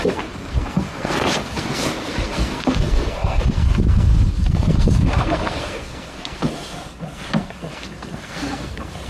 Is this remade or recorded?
remade